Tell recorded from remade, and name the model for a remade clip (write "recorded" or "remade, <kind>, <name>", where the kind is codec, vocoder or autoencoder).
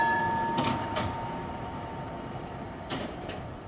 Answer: remade, vocoder, BigVGAN v2